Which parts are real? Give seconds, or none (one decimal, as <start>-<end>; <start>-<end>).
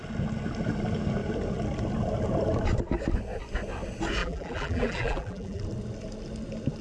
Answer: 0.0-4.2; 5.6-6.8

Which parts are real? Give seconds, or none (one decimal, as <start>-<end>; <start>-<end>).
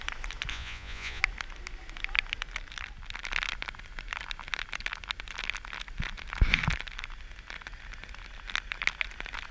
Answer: 0.0-0.5; 1.2-9.5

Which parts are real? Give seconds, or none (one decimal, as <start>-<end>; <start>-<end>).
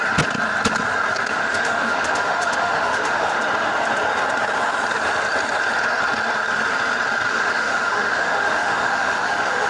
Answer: 0.0-1.3; 3.3-7.3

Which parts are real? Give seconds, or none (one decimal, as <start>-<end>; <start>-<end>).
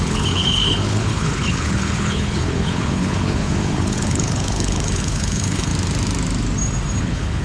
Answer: 5.7-7.0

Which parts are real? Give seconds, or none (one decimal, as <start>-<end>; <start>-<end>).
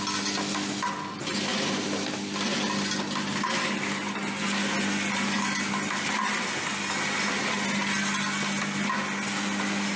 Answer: 0.0-10.0